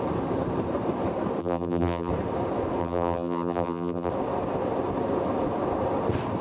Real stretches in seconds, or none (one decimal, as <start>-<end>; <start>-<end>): 0.0-1.4; 2.1-2.8; 4.1-6.4